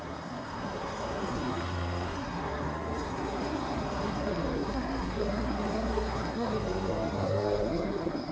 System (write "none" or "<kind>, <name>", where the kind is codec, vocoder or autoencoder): codec, SNAC